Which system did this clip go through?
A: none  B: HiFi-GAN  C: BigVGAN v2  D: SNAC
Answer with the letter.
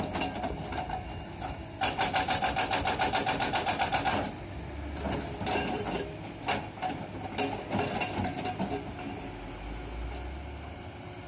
A